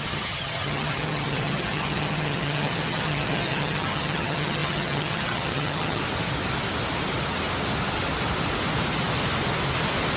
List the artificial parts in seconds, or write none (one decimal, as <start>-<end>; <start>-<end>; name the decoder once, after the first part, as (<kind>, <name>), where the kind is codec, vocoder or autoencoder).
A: 0.0-6.0 (vocoder, HiFi-GAN)